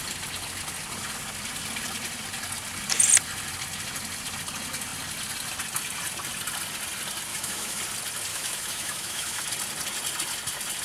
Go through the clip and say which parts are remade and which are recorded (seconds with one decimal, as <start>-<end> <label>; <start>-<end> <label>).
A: 0.0-7.3 recorded; 7.3-7.8 remade; 7.8-8.3 recorded; 8.3-9.4 remade; 9.4-10.8 recorded